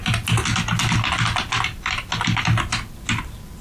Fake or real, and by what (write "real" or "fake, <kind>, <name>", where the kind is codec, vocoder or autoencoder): real